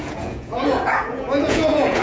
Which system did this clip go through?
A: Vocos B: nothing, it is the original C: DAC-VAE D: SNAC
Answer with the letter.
A